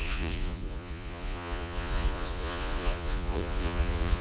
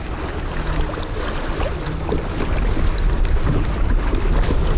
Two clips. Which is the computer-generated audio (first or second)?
first